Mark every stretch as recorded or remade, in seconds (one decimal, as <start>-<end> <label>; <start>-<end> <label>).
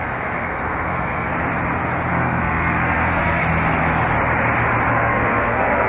0.0-1.3 remade; 1.3-2.1 recorded; 2.1-3.4 remade; 3.4-4.9 recorded; 4.9-5.9 remade